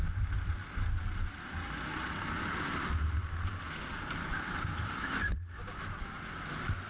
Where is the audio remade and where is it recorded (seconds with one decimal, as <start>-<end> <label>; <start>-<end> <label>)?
0.0-6.9 recorded